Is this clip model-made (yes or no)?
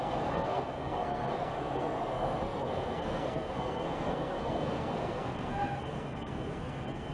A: yes